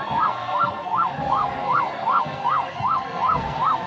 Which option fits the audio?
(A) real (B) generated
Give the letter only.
B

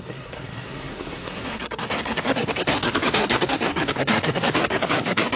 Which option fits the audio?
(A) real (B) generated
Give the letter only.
B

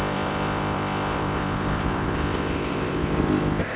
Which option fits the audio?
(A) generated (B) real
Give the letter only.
A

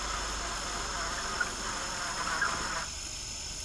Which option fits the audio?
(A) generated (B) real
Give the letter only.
B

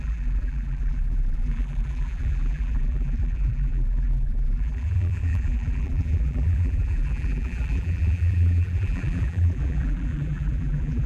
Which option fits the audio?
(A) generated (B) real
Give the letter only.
A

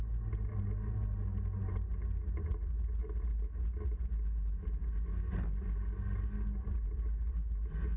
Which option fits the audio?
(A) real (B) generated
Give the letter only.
A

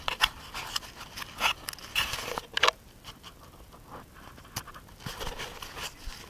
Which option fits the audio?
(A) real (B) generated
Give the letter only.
A